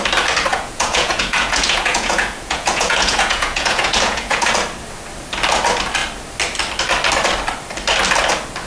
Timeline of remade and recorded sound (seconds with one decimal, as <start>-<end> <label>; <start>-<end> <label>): 0.0-0.5 recorded; 0.5-4.5 remade; 4.5-8.7 recorded